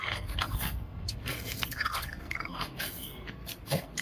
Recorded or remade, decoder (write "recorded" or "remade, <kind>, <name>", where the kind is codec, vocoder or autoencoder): remade, codec, SNAC